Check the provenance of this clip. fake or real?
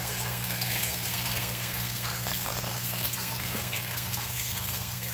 fake